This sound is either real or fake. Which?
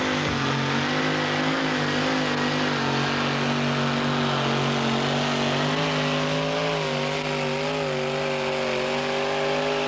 real